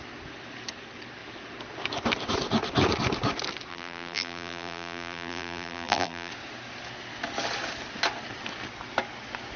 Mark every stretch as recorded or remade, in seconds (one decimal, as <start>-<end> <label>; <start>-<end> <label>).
0.0-3.7 recorded; 3.7-6.3 remade; 6.3-9.6 recorded